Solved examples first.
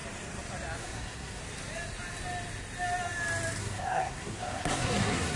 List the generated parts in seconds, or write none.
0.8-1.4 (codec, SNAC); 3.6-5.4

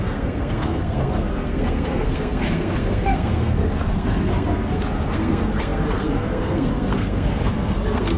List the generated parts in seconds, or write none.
0.0-8.2 (codec, SNAC)

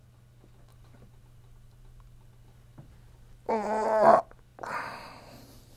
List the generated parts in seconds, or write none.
none

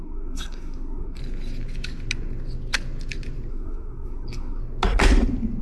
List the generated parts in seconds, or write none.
0.0-1.2 (codec, SNAC); 3.5-4.6